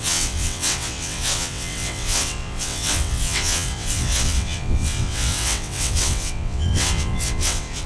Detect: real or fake fake